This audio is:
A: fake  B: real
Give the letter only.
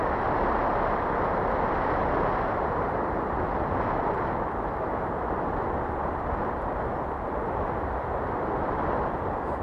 B